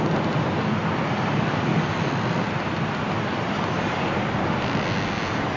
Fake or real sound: real